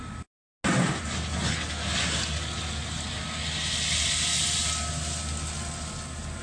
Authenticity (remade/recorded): recorded